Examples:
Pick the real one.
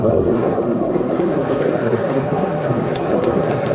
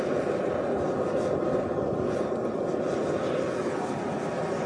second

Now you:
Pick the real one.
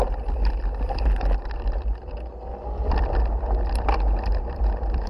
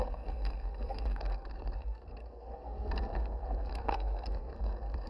first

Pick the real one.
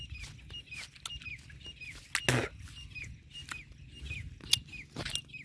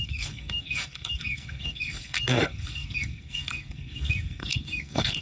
first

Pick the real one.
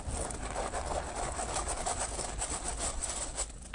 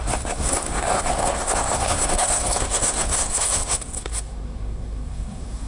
first